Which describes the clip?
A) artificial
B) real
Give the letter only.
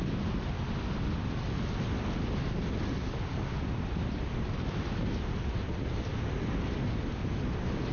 B